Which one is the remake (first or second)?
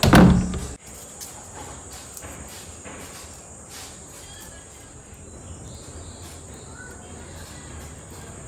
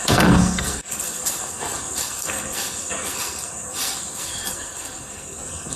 second